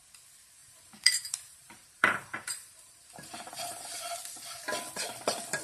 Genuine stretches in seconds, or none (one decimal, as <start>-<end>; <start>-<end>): 0.0-0.6; 4.0-5.6